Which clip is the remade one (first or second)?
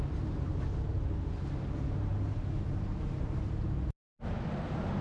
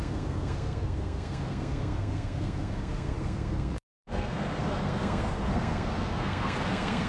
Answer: second